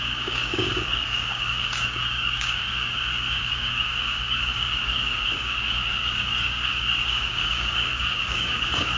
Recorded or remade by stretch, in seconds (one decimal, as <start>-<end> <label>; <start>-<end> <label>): 0.0-9.0 remade